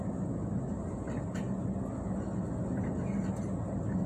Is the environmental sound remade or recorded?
recorded